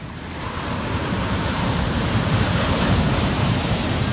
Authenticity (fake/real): fake